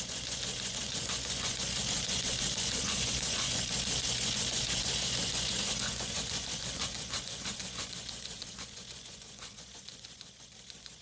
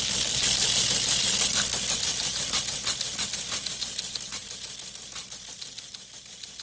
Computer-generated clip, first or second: first